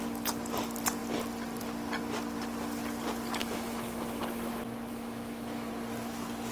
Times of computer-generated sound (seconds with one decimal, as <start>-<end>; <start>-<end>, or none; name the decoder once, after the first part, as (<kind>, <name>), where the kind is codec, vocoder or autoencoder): 3.4-4.2 (autoencoder, DAC-VAE); 4.9-5.7